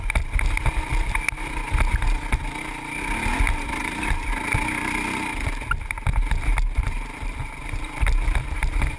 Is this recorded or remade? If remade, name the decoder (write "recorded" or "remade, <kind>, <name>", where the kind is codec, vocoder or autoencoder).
recorded